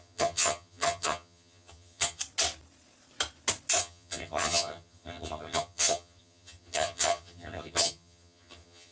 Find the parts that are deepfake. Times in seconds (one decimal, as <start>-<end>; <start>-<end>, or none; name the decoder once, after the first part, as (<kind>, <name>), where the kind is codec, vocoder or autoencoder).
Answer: 0.0-2.2 (vocoder, HiFi-GAN); 3.8-8.9